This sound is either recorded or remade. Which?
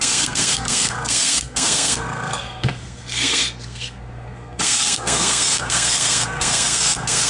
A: remade